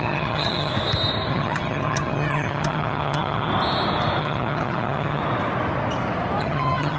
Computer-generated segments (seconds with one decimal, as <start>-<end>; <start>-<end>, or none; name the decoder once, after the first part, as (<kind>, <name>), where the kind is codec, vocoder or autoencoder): 0.0-0.7 (vocoder, HiFi-GAN); 1.3-3.5; 4.2-5.2; 6.4-7.0